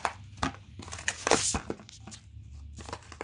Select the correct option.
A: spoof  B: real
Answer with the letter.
B